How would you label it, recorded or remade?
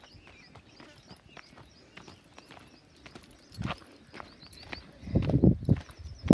recorded